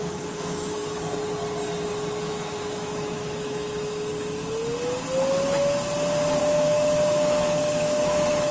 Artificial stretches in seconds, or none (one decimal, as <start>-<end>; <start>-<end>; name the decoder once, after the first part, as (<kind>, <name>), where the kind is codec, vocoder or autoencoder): 0.0-0.8 (autoencoder, DAC-VAE); 2.3-4.1; 6.4-8.5